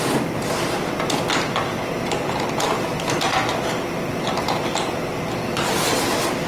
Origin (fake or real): real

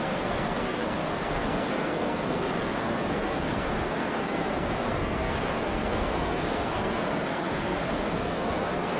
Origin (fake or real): fake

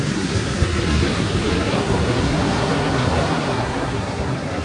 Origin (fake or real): fake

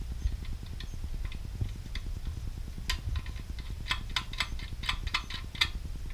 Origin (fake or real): real